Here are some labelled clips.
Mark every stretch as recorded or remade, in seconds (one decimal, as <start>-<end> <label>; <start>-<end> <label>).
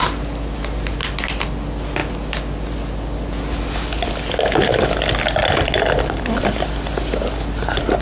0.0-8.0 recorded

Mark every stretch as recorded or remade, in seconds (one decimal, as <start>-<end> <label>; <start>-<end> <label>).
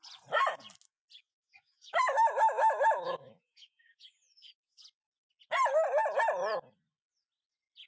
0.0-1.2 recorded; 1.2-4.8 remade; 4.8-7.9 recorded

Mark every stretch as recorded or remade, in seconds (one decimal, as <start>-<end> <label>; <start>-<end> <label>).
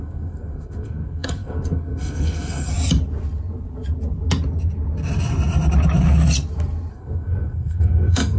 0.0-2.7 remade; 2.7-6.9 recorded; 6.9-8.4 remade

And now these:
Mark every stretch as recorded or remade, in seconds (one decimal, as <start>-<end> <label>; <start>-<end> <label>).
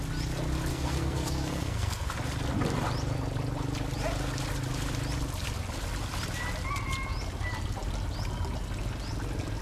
0.0-0.7 recorded; 0.7-2.1 remade; 2.1-9.6 recorded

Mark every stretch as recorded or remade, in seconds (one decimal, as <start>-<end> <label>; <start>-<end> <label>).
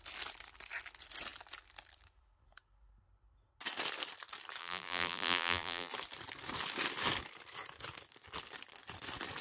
0.0-4.6 recorded; 4.6-5.9 remade; 5.9-9.4 recorded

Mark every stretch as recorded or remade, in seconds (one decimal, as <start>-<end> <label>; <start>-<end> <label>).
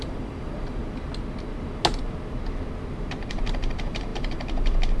0.0-0.8 remade; 0.8-3.3 recorded; 3.3-5.0 remade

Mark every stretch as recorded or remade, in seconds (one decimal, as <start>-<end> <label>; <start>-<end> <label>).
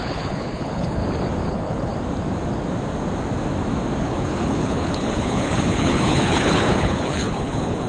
0.0-1.0 remade; 1.0-1.5 recorded; 1.5-1.9 remade; 1.9-4.0 recorded; 4.0-7.9 remade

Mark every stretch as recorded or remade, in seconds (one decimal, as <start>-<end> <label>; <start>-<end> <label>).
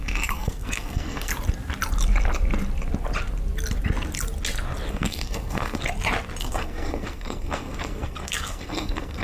0.0-1.3 remade; 1.3-4.9 recorded; 4.9-5.8 remade; 5.8-6.4 recorded; 6.4-9.2 remade